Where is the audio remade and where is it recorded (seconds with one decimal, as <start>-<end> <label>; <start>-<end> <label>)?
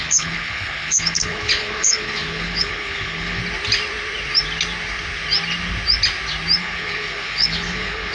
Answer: 0.0-3.4 remade; 3.4-6.6 recorded; 6.6-8.1 remade